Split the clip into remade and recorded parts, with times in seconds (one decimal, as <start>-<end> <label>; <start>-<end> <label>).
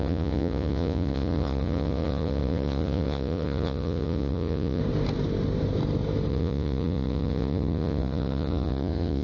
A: 0.0-4.8 remade; 4.8-6.3 recorded; 6.3-9.2 remade